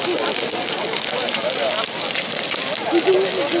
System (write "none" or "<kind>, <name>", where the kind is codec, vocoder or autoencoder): none